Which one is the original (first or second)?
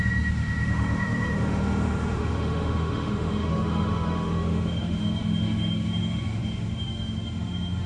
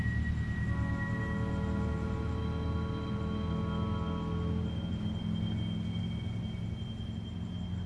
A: second